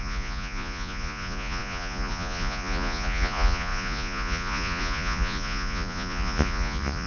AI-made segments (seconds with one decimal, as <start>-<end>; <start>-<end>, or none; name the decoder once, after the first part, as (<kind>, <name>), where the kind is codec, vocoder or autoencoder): 0.0-7.1 (vocoder, Vocos)